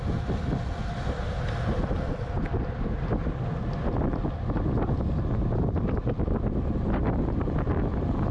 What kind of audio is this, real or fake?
real